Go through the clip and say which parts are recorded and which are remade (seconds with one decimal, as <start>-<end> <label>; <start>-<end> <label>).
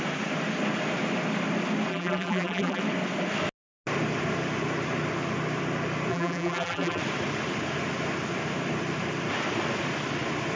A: 0.0-1.9 recorded; 1.9-2.8 remade; 2.8-6.1 recorded; 6.1-7.0 remade; 7.0-10.6 recorded